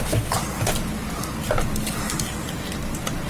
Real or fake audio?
real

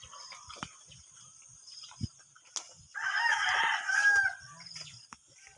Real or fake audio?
real